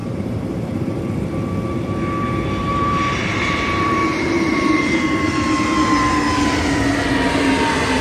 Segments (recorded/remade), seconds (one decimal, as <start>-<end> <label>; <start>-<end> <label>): 0.0-0.9 remade; 0.9-2.6 recorded; 2.6-5.3 remade; 5.3-8.0 recorded

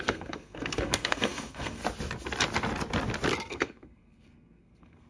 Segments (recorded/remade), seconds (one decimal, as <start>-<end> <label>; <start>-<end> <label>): 0.0-1.8 remade; 1.8-3.5 recorded; 3.5-5.1 remade

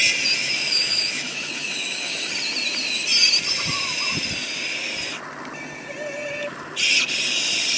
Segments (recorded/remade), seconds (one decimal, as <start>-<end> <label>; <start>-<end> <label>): 0.0-0.4 recorded; 0.4-2.3 remade; 2.3-7.8 recorded

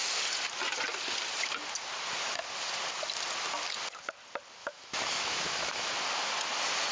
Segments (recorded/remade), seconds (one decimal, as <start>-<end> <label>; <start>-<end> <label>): 0.0-4.6 recorded; 4.6-5.9 remade; 5.9-6.9 recorded

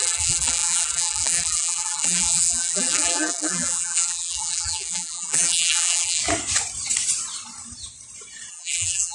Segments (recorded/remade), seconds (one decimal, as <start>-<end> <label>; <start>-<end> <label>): 0.0-6.2 remade; 6.2-8.5 recorded; 8.5-9.1 remade